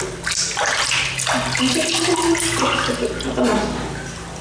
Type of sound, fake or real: real